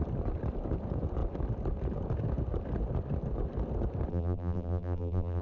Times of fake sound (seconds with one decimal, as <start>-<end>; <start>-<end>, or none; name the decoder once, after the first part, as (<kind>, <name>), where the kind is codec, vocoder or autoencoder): 4.1-5.4 (vocoder, BigVGAN v2)